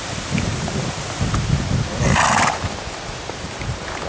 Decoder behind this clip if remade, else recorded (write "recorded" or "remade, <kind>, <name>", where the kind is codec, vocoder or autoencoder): recorded